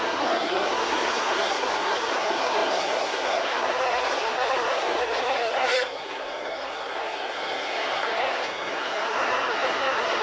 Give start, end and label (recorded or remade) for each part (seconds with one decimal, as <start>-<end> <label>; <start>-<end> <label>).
0.0-10.2 remade